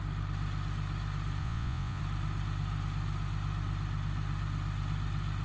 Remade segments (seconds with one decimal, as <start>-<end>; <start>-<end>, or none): 1.4-2.0